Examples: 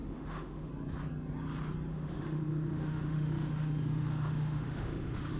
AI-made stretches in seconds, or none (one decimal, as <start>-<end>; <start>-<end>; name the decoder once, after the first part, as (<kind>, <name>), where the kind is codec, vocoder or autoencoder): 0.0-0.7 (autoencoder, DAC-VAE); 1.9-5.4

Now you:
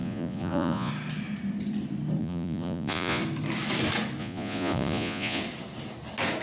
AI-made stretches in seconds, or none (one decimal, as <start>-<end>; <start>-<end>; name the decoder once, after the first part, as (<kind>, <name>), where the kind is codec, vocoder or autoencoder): 0.0-0.9 (vocoder, Vocos); 2.2-3.2; 4.2-5.4

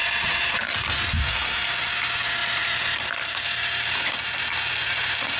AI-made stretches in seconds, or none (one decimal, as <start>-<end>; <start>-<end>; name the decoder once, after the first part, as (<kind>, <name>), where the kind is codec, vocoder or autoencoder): 0.0-1.3 (vocoder, BigVGAN v2); 2.4-4.0

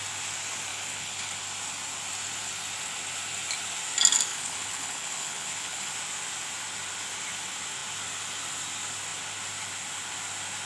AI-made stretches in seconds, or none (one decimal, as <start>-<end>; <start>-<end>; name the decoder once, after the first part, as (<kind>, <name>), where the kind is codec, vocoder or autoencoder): 0.7-1.4 (codec, HILCodec); 4.3-5.9

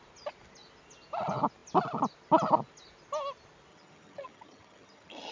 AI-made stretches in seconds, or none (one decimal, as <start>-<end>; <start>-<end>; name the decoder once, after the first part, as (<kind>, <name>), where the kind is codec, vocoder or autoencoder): 3.7-5.3 (vocoder, HiFi-GAN)

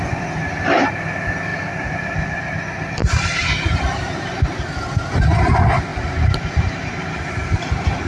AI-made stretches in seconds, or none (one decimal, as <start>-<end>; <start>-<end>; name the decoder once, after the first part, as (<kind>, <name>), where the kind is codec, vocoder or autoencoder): 1.5-2.6 (vocoder, BigVGAN v2); 3.0-4.6; 5.9-8.1

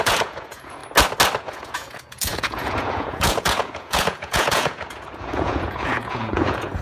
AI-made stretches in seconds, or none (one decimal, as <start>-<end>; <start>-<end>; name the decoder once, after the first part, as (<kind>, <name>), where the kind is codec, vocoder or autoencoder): 0.0-0.8 (vocoder, Vocos); 1.4-6.8